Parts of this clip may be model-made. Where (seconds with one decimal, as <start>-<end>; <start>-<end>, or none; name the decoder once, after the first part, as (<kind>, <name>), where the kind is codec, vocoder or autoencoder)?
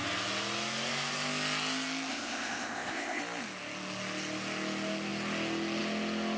2.1-3.2 (codec, ZipCodec)